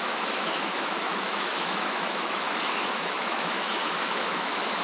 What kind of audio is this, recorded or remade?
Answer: remade